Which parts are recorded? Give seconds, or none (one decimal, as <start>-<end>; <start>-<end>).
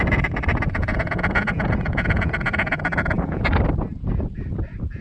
0.0-0.5; 3.5-5.0